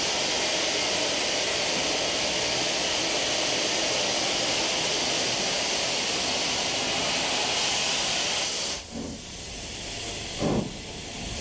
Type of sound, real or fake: real